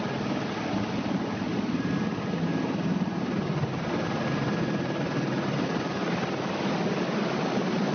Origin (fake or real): real